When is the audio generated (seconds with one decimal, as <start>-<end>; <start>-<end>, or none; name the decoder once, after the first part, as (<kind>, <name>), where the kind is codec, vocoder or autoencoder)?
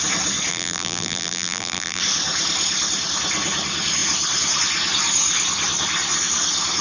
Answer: 0.5-2.0 (vocoder, BigVGAN v2)